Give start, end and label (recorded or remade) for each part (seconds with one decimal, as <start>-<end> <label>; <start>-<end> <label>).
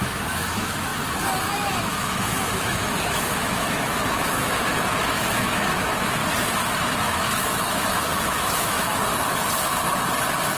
0.0-0.9 remade; 0.9-1.8 recorded; 1.8-6.2 remade; 6.2-7.1 recorded; 7.1-9.1 remade; 9.1-10.6 recorded